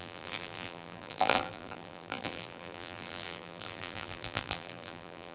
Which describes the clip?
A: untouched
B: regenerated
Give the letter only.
B